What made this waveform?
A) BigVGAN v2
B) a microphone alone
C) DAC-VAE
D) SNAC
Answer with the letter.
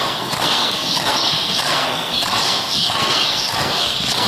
D